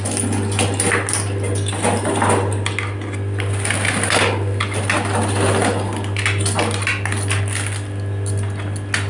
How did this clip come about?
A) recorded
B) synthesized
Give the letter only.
A